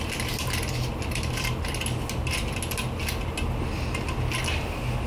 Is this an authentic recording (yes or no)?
yes